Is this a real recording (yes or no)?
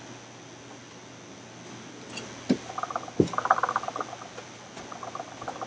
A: yes